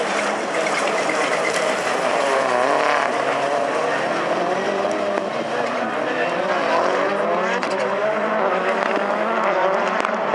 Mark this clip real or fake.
real